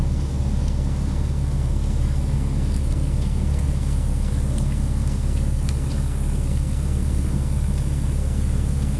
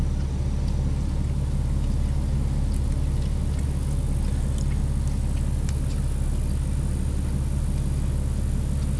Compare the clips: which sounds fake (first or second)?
first